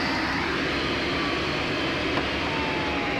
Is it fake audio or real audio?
real